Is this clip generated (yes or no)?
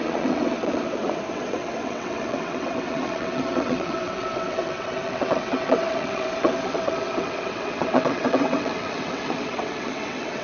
yes